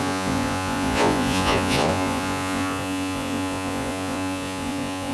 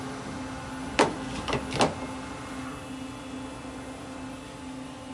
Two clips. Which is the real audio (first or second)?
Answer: second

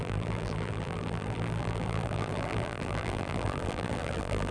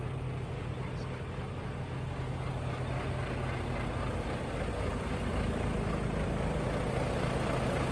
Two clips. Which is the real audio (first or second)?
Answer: second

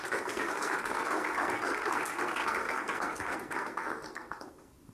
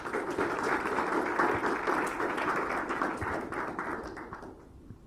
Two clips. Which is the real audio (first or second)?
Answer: second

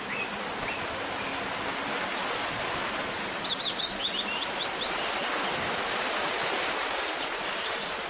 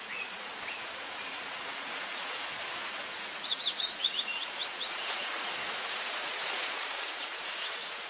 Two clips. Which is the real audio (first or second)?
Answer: first